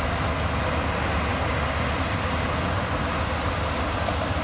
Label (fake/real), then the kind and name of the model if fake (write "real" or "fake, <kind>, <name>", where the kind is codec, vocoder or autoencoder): real